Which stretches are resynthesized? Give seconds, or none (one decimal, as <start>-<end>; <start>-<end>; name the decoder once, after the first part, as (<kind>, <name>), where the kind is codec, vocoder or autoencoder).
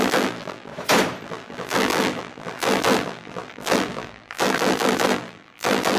0.0-0.7 (vocoder, BigVGAN v2); 1.2-6.0